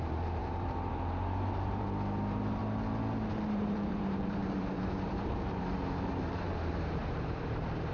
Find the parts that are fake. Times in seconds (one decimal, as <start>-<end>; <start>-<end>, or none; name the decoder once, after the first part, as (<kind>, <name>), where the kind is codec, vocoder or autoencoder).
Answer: 0.0-2.6 (vocoder, BigVGAN v2); 3.3-7.9